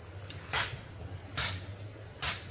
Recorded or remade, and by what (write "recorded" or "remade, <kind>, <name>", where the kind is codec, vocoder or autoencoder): recorded